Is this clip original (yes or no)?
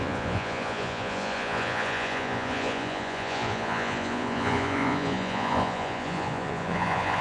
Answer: no